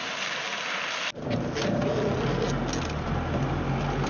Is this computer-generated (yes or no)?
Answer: no